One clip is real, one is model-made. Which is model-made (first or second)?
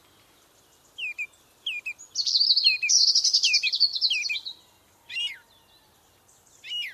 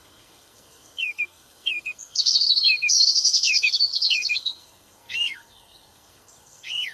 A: second